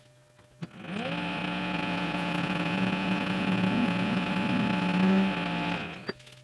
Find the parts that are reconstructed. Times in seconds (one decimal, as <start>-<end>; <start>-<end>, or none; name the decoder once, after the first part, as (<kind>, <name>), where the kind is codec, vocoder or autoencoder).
1.4-4.3 (vocoder, Vocos)